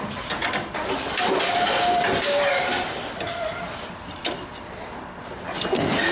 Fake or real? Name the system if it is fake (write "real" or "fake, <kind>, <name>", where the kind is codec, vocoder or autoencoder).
real